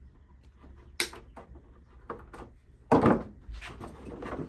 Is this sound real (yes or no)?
yes